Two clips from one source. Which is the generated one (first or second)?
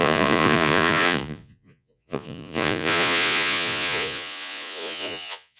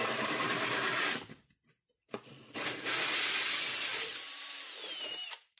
first